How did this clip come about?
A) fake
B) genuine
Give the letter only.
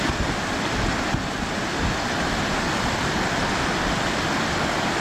B